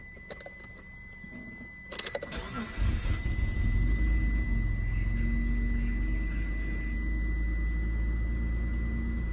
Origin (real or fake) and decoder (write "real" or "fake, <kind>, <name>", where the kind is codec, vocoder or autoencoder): real